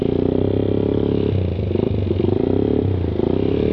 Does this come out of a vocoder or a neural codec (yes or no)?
no